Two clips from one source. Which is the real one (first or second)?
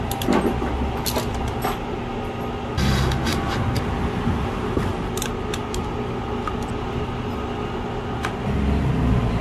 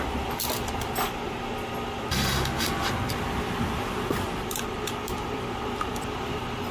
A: first